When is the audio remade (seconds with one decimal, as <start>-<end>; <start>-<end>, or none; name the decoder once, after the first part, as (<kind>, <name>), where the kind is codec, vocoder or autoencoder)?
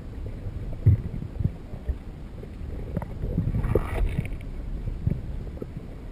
none